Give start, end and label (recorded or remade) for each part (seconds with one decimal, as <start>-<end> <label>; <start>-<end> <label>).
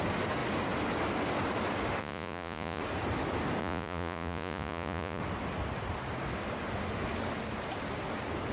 0.0-2.0 recorded; 2.0-2.8 remade; 2.8-3.6 recorded; 3.6-5.2 remade; 5.2-8.5 recorded